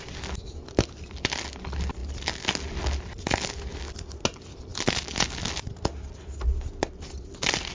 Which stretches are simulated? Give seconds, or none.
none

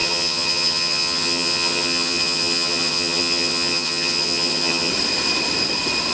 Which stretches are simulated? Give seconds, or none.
0.0-4.9 (vocoder, HiFi-GAN)

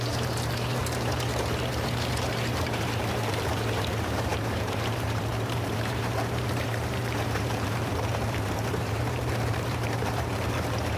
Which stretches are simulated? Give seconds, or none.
0.0-11.0 (vocoder, BigVGAN v2)

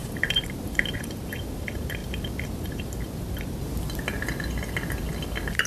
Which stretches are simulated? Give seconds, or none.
0.0-1.0 (vocoder, BigVGAN v2)

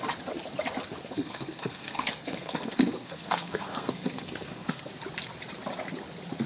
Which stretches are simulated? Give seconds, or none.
1.0-4.9 (codec, SNAC)